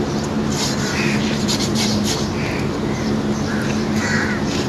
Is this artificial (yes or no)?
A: yes